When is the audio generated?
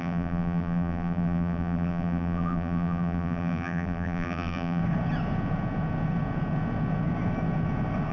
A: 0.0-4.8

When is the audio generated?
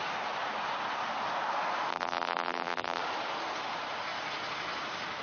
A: 1.9-3.0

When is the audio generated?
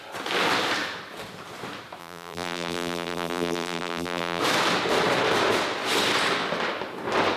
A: 2.0-4.4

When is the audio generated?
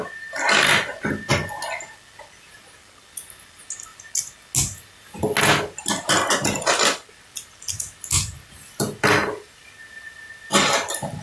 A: 9.2-11.2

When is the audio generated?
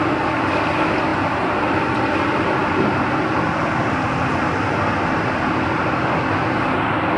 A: 1.1-1.8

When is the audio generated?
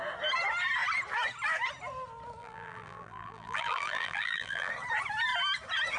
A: 2.4-4.7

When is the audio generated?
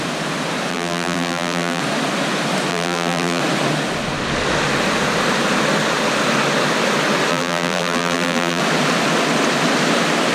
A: 0.7-1.8; 2.7-3.4; 7.3-8.6